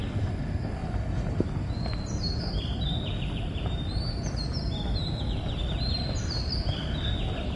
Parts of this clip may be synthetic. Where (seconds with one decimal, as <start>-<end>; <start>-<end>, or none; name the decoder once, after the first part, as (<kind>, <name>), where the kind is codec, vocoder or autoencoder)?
0.0-0.8 (vocoder, BigVGAN v2); 2.4-7.6